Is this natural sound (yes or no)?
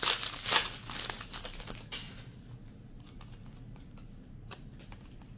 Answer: yes